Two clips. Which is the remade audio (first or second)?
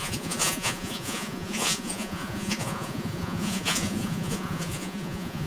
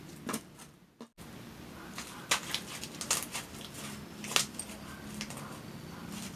first